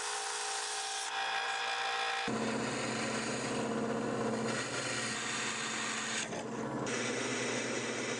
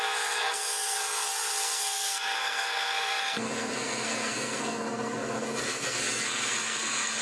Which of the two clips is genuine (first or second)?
first